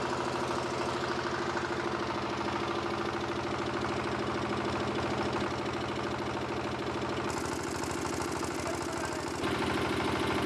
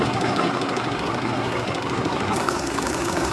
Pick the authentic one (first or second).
first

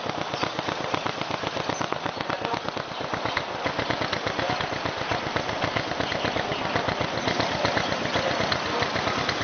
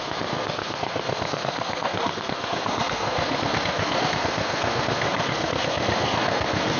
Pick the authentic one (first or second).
first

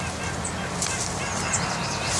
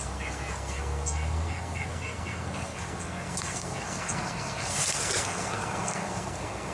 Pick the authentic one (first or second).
first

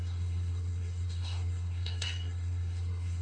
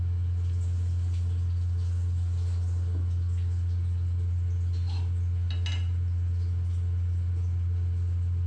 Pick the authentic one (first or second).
second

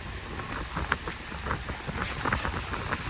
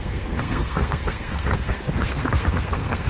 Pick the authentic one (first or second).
first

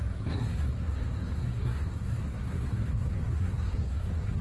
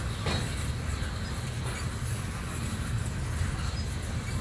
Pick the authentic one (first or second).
second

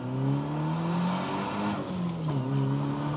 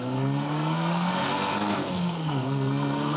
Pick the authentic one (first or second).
first